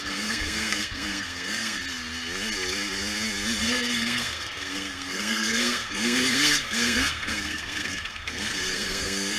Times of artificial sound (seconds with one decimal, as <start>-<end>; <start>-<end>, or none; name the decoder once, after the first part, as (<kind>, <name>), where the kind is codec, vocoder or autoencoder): 0.0-1.8 (codec, SNAC); 3.6-9.4